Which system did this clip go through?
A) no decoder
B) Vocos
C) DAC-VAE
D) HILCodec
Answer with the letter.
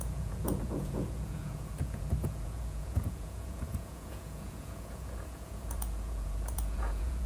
B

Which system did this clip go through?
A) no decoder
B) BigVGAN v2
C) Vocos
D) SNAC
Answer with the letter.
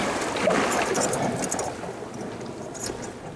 A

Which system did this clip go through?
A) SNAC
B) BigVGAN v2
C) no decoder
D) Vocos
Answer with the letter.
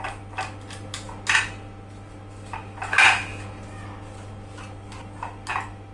C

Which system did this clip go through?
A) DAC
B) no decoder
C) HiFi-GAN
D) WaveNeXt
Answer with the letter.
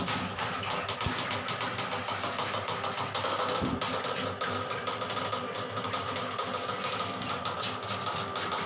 B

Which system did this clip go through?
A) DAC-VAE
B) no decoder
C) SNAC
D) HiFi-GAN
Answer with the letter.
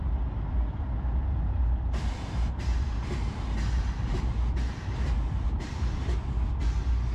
B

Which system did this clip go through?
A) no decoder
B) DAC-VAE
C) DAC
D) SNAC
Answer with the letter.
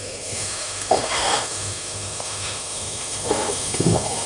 B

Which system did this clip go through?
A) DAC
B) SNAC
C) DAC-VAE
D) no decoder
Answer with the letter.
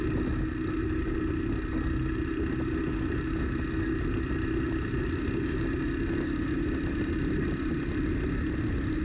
D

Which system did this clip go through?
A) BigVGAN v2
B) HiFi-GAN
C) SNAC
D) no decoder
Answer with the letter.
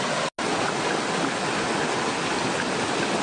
D